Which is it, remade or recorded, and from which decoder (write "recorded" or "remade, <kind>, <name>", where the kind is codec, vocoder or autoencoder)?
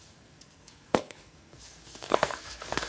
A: remade, codec, SNAC